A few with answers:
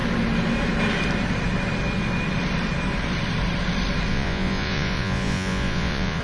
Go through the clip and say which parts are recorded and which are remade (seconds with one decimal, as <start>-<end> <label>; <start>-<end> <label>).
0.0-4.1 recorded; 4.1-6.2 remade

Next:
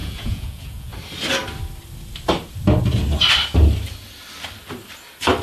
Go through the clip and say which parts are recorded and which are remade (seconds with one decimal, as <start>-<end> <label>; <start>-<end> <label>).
0.0-0.9 remade; 0.9-5.4 recorded

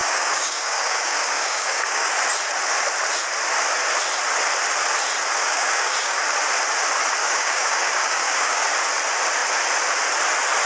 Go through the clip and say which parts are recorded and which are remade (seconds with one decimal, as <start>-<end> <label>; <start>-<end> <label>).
0.0-2.1 remade; 2.1-5.4 recorded; 5.4-6.2 remade; 6.2-7.2 recorded; 7.2-8.6 remade; 8.6-10.7 recorded

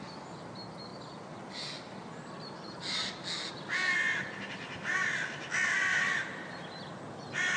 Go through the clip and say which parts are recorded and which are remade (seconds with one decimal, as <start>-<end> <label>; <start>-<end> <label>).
0.0-7.6 recorded

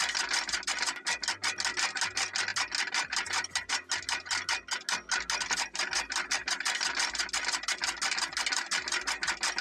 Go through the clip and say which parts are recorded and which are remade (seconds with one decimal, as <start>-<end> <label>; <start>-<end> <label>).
0.0-9.6 recorded

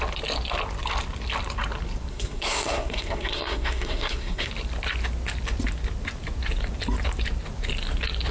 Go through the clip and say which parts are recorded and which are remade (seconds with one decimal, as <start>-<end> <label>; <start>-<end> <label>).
0.0-2.1 recorded; 2.1-4.5 remade; 4.5-8.3 recorded

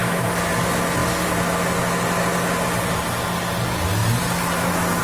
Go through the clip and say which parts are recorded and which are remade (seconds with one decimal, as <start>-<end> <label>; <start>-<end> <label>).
0.0-5.0 recorded

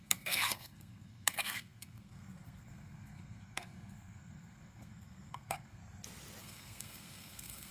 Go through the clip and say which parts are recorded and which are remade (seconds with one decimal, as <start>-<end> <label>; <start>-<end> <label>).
0.0-5.8 remade; 5.8-6.4 recorded; 6.4-7.7 remade